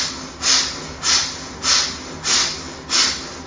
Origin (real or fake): real